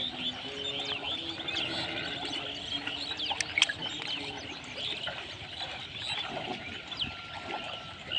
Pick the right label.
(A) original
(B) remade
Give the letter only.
A